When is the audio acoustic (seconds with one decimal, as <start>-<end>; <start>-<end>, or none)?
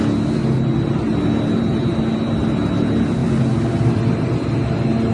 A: 0.0-3.2; 3.9-5.1